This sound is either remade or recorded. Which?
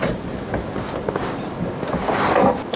recorded